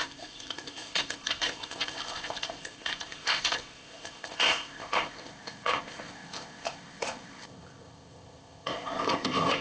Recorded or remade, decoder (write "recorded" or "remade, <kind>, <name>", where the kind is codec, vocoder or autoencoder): remade, codec, ZipCodec